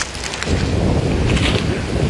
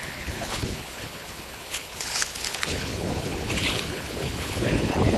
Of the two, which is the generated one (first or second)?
second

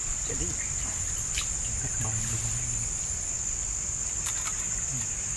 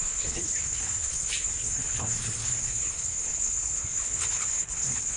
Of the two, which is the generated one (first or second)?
second